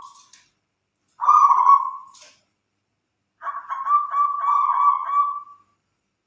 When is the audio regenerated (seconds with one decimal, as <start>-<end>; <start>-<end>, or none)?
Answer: none